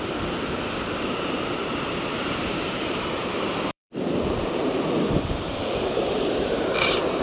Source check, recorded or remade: remade